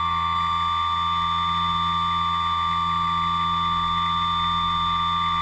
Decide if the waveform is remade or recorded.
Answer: recorded